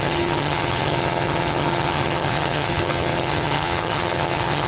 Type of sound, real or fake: fake